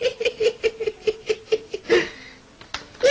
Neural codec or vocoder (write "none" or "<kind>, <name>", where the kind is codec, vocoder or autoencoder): none